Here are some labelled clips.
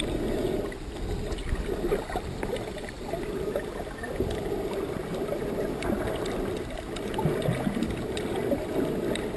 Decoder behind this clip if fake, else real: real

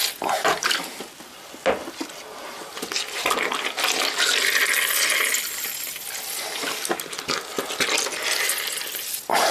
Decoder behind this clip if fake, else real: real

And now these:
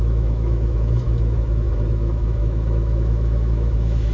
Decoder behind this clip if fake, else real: fake, autoencoder, DAC-VAE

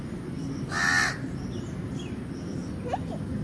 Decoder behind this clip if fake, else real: real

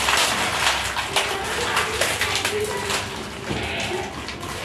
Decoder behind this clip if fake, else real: real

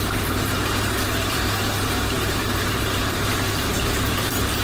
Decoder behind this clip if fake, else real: fake, vocoder, BigVGAN v2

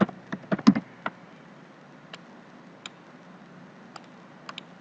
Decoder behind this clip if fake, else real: real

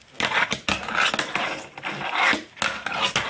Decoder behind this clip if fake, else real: real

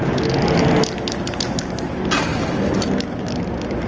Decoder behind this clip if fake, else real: real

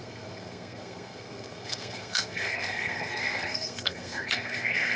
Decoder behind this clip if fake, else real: fake, codec, SNAC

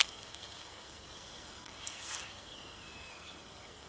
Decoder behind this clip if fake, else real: fake, codec, SNAC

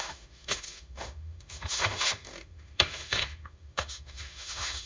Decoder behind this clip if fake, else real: fake, autoencoder, DAC-VAE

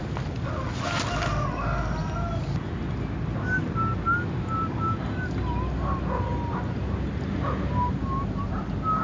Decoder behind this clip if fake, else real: real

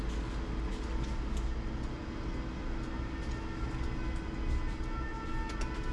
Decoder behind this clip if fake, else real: real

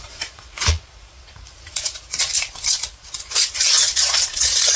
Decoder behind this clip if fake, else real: fake, vocoder, Vocos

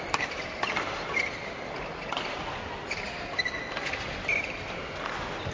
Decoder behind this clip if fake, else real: real